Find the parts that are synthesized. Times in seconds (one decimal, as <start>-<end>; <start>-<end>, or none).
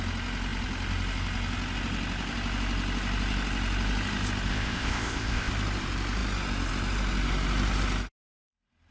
4.5-5.5